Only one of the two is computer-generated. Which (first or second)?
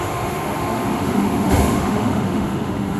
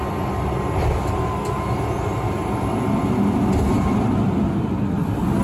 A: first